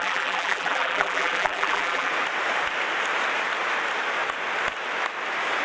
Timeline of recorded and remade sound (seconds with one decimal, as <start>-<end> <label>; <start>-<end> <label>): 0.0-2.1 remade; 2.1-5.6 recorded